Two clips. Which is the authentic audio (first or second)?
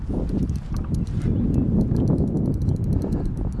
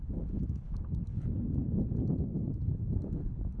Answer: first